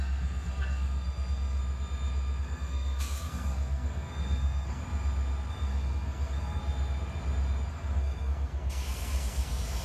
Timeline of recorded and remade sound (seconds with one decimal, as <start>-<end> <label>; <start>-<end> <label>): 0.0-1.6 remade; 1.6-2.4 recorded; 2.4-4.8 remade; 4.8-5.5 recorded; 5.5-6.6 remade; 6.6-7.7 recorded; 7.7-9.8 remade